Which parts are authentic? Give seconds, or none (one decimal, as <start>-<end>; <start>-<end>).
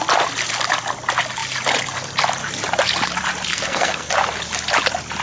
0.0-3.5; 4.1-5.2